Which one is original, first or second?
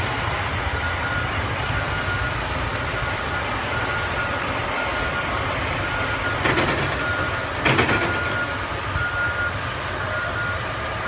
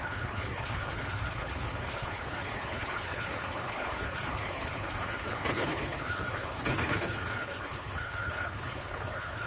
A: first